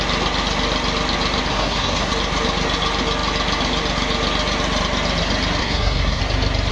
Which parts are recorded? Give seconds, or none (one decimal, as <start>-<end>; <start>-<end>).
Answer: 0.0-1.5; 2.1-5.6; 6.2-6.7